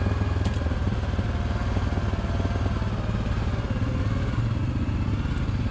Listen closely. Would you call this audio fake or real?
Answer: real